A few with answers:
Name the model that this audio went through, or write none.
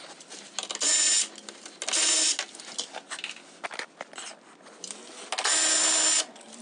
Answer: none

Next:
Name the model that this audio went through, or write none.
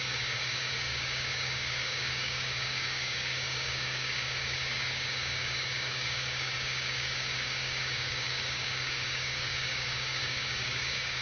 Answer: codec, DAC